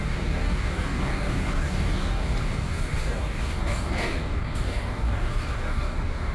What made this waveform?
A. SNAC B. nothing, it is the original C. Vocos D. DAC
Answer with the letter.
D